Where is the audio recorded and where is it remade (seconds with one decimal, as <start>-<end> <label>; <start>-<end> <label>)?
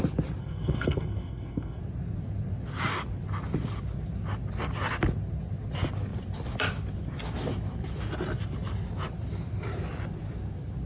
0.0-0.4 recorded; 0.4-1.8 remade; 1.8-10.9 recorded